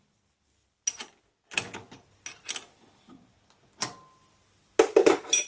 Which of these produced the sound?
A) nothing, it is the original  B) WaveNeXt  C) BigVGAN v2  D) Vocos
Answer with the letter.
A